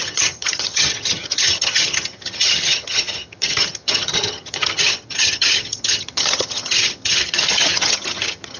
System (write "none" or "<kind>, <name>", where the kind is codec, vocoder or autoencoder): vocoder, HiFi-GAN